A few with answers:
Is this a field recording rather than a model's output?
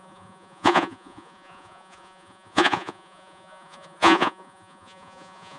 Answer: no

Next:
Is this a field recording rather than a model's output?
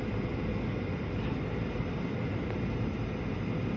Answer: yes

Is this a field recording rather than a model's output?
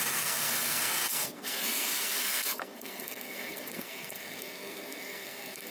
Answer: no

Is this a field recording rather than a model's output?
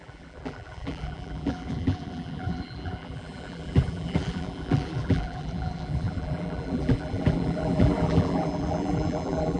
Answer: no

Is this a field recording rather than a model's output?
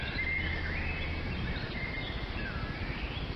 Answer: yes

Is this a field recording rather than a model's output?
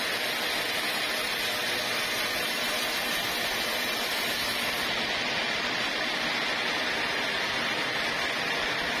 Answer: yes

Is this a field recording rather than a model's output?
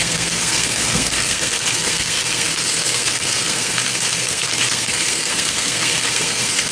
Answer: no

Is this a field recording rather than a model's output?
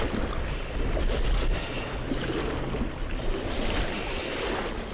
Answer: yes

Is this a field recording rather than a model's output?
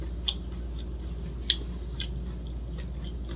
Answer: yes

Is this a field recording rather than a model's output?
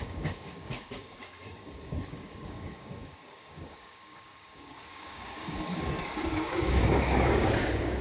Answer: no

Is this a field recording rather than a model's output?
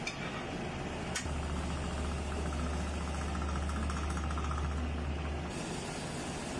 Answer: yes